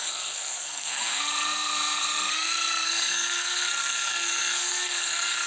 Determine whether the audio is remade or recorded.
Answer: remade